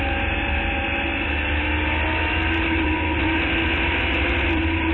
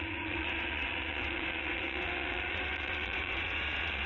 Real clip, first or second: first